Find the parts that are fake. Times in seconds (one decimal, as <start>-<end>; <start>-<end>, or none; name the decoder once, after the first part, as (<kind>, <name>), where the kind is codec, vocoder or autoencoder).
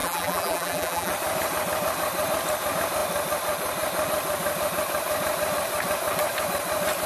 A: 0.0-1.1 (vocoder, BigVGAN v2)